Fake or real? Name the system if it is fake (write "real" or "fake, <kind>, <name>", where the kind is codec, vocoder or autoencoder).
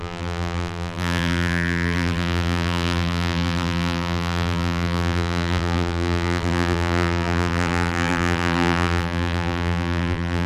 fake, vocoder, BigVGAN v2